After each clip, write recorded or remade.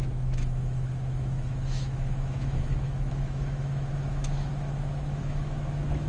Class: remade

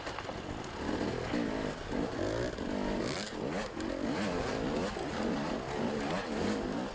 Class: recorded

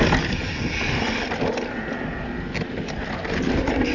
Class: recorded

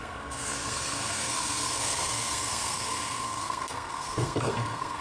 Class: remade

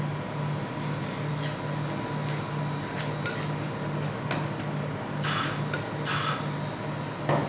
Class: recorded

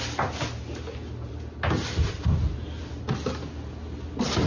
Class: recorded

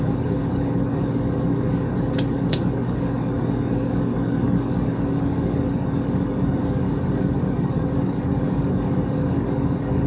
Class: remade